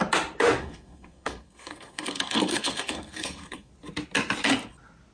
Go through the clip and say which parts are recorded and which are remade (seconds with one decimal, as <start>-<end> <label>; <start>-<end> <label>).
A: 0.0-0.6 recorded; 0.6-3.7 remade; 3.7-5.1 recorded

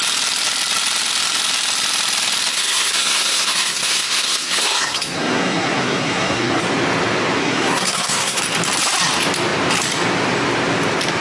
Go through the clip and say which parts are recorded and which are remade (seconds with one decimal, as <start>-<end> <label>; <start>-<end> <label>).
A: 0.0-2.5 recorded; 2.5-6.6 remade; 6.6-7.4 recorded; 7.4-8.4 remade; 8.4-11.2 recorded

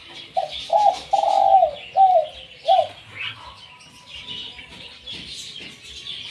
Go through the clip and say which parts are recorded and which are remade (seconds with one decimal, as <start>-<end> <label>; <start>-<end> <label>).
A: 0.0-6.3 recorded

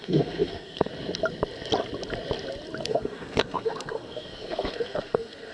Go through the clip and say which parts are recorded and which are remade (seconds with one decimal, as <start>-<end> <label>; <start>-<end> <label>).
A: 0.0-0.9 remade; 0.9-2.8 recorded; 2.8-5.5 remade